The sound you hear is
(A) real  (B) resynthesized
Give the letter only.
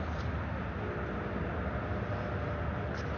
A